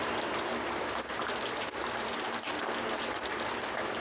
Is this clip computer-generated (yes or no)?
no